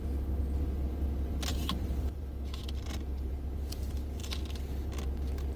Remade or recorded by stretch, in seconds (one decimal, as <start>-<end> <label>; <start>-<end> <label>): 0.0-1.5 recorded; 1.5-3.3 remade; 3.3-5.6 recorded